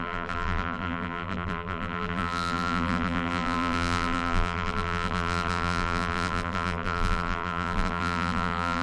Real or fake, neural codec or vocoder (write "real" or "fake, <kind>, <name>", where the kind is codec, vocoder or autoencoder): fake, vocoder, BigVGAN v2